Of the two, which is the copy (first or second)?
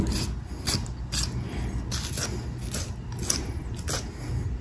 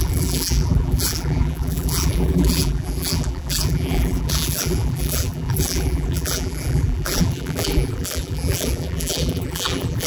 second